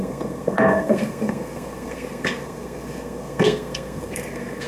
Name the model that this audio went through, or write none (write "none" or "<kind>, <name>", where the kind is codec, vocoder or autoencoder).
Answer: codec, SNAC